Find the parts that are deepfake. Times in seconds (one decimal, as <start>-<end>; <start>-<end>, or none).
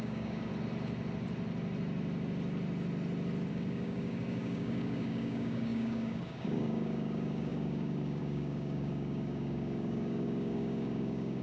0.0-0.5; 3.5-11.4